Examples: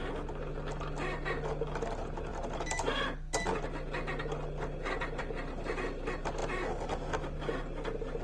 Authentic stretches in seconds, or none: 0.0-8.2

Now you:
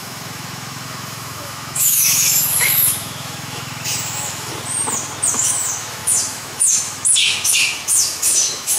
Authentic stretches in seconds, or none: 4.5-5.3

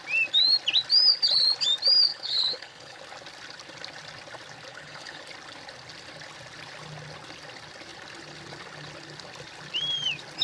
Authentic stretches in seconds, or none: 0.0-2.1; 3.0-4.7; 5.2-10.4

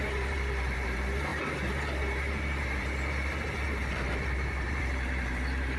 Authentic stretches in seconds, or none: none

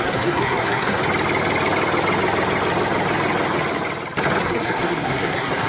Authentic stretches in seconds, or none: 1.0-4.4

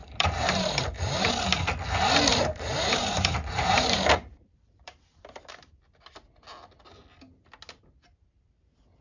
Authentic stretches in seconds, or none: 1.1-2.3; 5.7-9.0

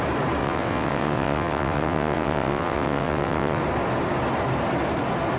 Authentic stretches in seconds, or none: 0.0-0.4; 3.6-5.4

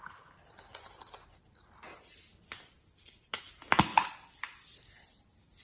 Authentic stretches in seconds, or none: 0.0-3.9; 4.8-5.6